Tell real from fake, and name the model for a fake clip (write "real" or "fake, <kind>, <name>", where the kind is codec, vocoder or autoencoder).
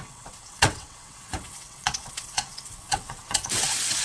fake, vocoder, WaveNeXt